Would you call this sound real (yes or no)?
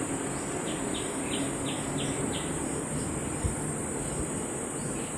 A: yes